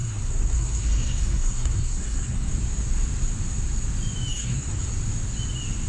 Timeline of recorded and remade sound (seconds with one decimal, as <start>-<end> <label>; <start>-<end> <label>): 0.0-2.5 remade; 2.5-4.3 recorded; 4.3-4.9 remade; 4.9-5.9 recorded